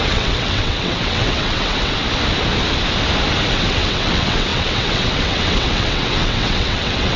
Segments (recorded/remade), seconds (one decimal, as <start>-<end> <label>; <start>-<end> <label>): 0.0-2.0 remade; 2.0-3.5 recorded; 3.5-7.2 remade